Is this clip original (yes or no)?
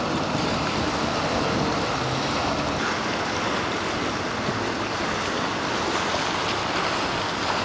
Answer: yes